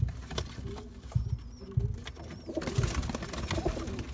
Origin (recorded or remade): recorded